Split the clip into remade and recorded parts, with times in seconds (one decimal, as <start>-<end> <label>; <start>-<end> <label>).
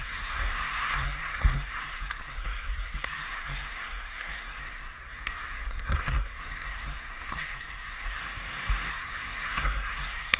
0.0-8.2 remade; 8.2-8.9 recorded; 8.9-10.4 remade